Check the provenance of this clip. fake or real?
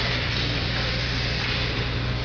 fake